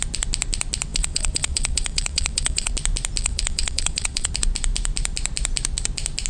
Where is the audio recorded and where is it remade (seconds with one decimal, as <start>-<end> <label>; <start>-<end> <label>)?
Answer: 0.0-0.9 recorded; 0.9-2.7 remade; 2.7-3.2 recorded; 3.2-4.3 remade; 4.3-6.3 recorded